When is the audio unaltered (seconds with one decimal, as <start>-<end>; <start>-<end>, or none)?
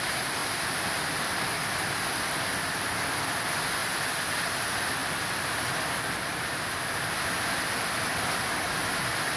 none